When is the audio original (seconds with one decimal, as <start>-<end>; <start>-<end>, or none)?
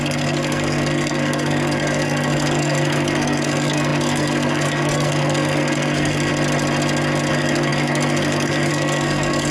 6.3-7.3